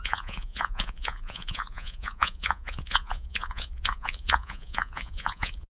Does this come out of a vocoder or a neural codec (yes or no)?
yes